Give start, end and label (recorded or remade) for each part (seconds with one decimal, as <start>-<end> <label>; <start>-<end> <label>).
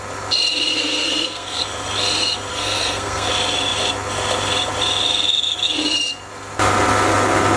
0.0-0.7 recorded; 0.7-1.6 remade; 1.6-2.5 recorded; 2.5-3.3 remade; 3.3-7.6 recorded